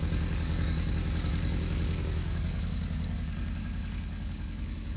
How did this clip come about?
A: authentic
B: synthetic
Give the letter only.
B